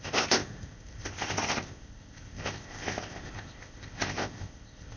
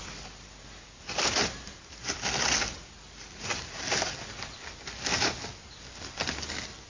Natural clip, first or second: second